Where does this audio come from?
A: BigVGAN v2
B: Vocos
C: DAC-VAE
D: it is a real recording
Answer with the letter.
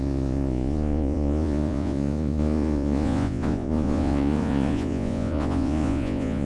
B